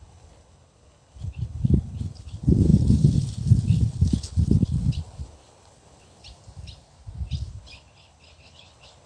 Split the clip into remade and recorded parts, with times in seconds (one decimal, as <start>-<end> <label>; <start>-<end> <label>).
0.0-6.2 remade; 6.2-7.5 recorded; 7.5-9.1 remade